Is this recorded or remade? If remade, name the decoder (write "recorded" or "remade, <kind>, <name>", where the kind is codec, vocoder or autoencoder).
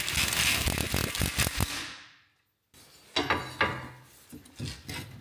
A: recorded